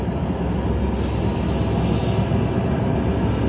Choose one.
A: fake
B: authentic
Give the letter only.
B